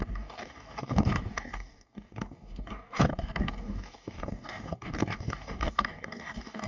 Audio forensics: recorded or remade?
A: remade